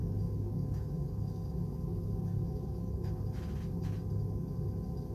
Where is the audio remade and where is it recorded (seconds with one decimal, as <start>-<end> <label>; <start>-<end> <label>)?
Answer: 0.0-3.1 remade; 3.1-5.1 recorded